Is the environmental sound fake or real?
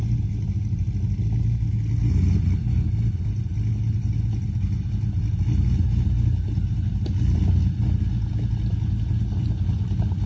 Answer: real